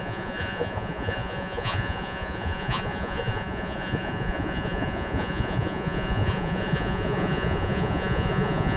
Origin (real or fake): fake